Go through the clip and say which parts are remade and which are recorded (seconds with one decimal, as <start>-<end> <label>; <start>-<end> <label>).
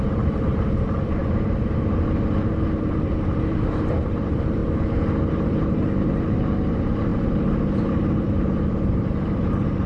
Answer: 0.0-4.6 remade; 4.6-5.3 recorded; 5.3-9.9 remade